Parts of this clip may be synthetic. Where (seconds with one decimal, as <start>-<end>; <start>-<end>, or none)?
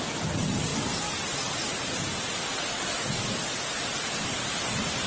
none